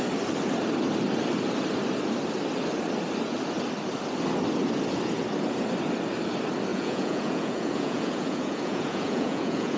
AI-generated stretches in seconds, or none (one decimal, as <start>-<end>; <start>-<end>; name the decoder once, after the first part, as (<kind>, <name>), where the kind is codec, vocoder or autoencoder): 6.7-9.8 (vocoder, Vocos)